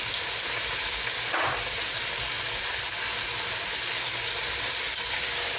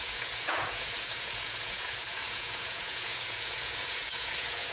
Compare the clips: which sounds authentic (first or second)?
first